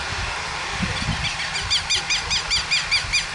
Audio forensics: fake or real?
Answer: real